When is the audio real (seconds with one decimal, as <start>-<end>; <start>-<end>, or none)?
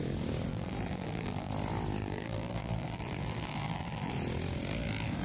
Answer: 0.0-0.5; 1.5-2.0; 4.1-5.2